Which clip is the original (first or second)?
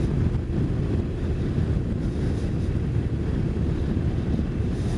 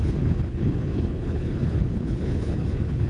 first